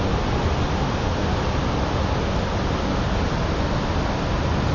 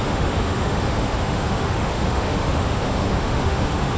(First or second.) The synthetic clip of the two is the second